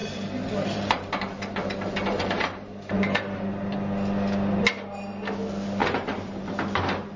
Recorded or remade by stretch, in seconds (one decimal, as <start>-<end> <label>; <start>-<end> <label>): 0.0-3.4 remade; 3.4-5.8 recorded; 5.8-6.5 remade; 6.5-7.2 recorded